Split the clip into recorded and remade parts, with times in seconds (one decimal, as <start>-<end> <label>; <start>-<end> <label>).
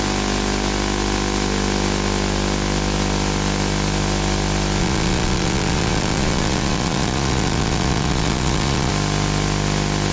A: 0.0-4.8 recorded; 4.8-8.9 remade; 8.9-10.1 recorded